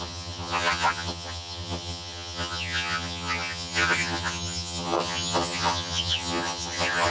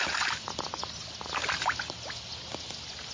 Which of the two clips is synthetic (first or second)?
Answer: first